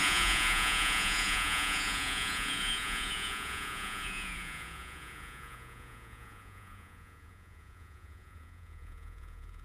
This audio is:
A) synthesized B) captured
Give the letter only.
A